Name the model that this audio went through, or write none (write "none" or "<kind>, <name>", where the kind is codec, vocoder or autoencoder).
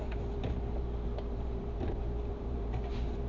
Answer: vocoder, BigVGAN v2